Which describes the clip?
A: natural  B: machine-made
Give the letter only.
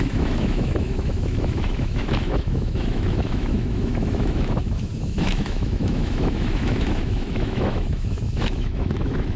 B